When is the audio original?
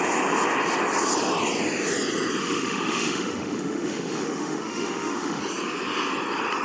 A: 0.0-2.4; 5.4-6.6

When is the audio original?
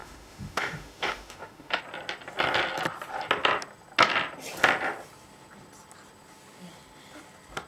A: 1.8-7.7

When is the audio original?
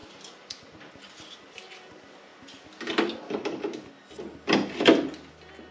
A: 0.0-5.7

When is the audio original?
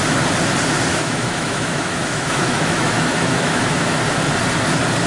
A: 0.0-0.9; 4.0-5.1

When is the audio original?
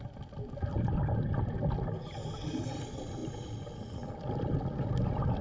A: 0.0-5.4